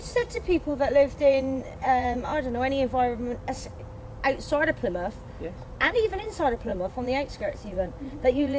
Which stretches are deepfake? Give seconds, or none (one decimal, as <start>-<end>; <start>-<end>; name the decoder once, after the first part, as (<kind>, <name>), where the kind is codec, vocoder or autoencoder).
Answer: 0.0-2.3 (vocoder, Vocos); 5.6-8.6